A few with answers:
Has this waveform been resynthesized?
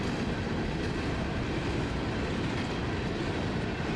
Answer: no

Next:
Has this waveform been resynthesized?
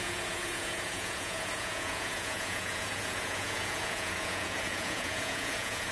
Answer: yes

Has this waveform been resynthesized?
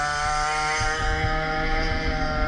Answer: no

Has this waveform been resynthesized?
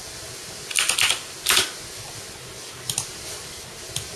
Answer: no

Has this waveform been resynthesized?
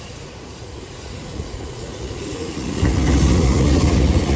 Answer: yes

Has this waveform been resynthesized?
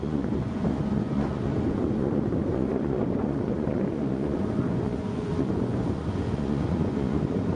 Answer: yes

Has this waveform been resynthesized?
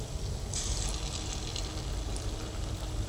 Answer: no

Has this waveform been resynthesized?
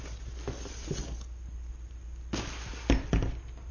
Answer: no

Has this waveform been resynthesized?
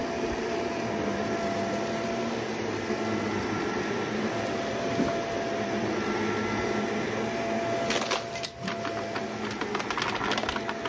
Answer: no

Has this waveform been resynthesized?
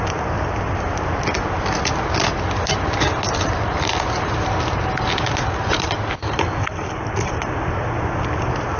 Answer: no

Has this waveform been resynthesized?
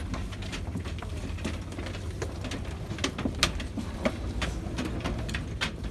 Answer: no